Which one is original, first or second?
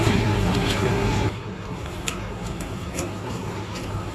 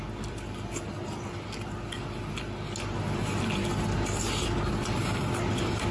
second